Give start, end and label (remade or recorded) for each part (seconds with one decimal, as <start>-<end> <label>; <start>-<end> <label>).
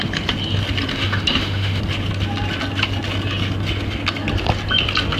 0.0-0.9 recorded; 0.9-1.8 remade; 1.8-5.2 recorded